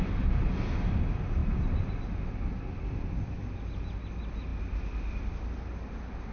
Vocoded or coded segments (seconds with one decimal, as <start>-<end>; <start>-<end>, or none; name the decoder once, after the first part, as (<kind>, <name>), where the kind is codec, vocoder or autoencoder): none